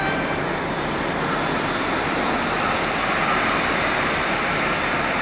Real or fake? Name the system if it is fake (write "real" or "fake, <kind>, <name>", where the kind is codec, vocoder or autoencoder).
real